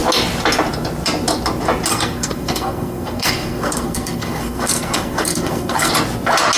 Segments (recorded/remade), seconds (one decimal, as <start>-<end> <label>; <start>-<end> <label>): 0.0-1.9 recorded; 1.9-5.9 remade; 5.9-6.6 recorded